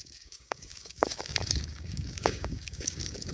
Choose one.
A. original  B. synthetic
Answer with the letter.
B